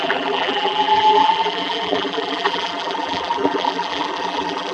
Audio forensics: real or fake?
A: fake